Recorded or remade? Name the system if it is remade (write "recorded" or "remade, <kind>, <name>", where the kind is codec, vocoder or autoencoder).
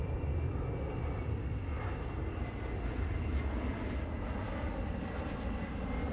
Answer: recorded